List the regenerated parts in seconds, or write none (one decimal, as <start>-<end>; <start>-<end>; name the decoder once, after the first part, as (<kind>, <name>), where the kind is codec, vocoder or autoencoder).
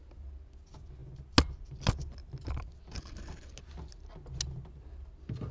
none